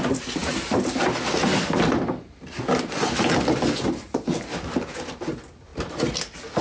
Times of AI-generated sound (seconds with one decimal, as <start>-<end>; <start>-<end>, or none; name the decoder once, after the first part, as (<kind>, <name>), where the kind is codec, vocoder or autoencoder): none